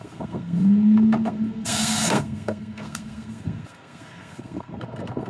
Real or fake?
fake